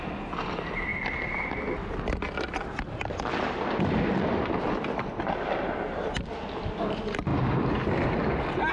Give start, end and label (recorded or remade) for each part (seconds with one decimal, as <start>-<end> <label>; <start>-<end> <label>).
0.0-8.7 recorded